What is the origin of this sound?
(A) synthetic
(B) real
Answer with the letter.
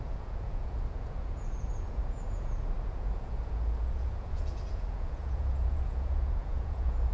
A